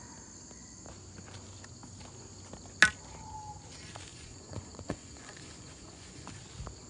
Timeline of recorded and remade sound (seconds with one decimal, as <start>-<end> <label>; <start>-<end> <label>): 0.0-4.1 recorded; 4.1-6.4 remade; 6.4-6.9 recorded